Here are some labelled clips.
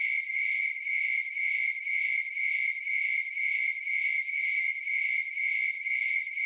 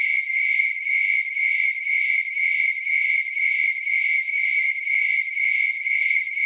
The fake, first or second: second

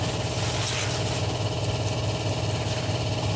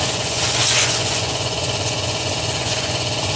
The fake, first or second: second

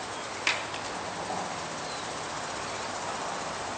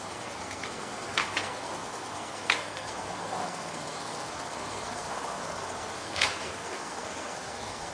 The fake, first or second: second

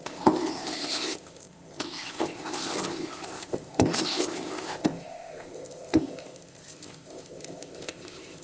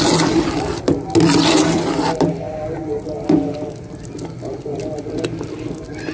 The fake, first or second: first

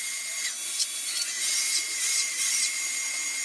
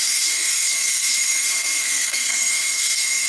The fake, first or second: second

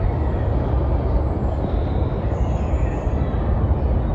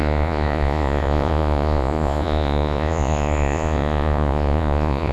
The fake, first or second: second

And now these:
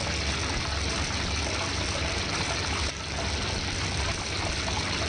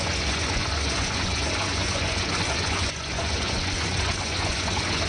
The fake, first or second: second